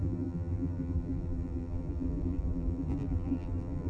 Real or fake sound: fake